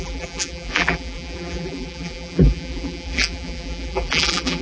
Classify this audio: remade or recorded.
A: remade